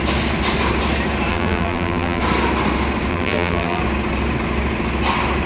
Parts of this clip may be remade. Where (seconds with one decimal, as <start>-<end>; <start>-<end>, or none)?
1.3-2.2; 3.1-3.8